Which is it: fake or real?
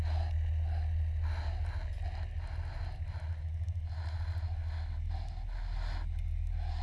real